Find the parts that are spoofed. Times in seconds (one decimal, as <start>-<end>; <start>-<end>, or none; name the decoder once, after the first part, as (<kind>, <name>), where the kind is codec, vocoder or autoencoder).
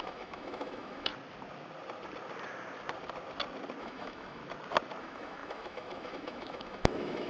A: 0.0-1.1 (autoencoder, DAC-VAE); 3.8-4.4; 5.0-7.3